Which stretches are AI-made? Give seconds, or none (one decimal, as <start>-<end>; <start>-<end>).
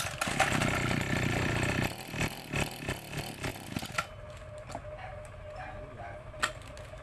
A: none